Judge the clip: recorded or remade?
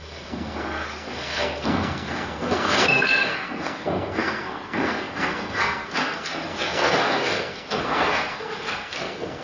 remade